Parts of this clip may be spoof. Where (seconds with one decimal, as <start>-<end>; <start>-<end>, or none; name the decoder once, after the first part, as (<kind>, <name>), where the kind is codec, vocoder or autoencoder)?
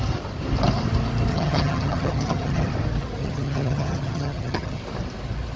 1.3-2.7 (vocoder, HiFi-GAN); 3.2-4.8